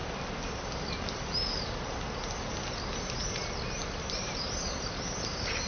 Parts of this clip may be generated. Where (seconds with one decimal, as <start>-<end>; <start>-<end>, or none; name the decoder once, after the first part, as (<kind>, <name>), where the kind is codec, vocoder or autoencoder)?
none